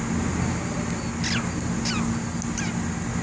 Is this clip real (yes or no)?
yes